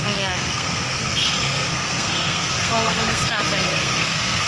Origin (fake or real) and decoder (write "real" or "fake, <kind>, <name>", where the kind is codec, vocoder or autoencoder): fake, codec, SNAC